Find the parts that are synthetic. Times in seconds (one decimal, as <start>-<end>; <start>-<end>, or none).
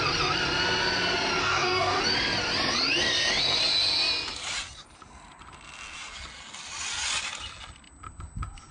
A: 1.4-2.0